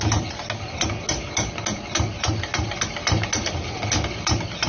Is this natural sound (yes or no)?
yes